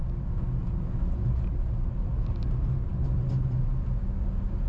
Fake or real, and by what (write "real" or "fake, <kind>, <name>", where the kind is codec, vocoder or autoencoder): real